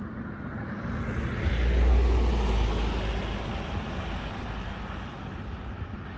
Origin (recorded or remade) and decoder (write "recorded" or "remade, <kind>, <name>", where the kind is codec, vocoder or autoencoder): recorded